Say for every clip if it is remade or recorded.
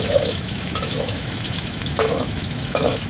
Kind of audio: remade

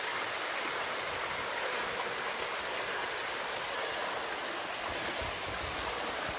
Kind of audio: recorded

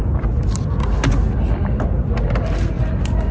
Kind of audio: recorded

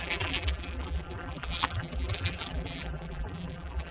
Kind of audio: remade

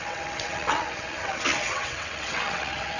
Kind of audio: remade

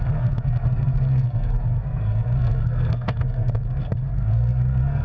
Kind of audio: remade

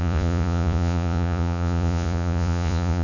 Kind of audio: remade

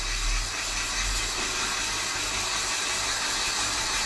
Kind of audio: recorded